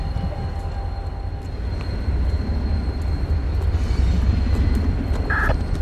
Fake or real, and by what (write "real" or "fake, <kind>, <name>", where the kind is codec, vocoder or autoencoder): real